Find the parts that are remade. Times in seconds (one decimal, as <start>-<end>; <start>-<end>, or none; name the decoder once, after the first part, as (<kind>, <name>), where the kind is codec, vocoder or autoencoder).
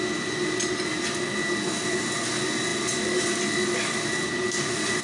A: none